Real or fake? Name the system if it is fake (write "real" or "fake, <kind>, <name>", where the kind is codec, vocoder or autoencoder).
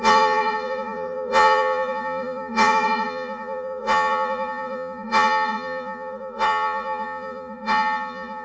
fake, vocoder, Vocos